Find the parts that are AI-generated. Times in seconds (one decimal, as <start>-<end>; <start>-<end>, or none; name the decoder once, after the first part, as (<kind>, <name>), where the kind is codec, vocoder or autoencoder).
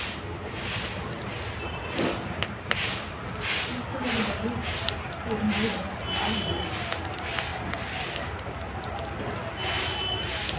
none